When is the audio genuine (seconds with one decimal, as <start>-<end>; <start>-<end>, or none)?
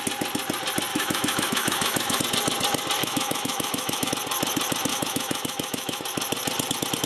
0.0-0.9; 2.2-3.0; 4.1-4.9; 6.0-7.1